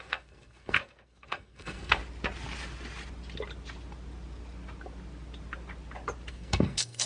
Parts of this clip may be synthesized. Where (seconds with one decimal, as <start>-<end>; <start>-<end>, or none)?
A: 0.0-2.0; 6.3-7.1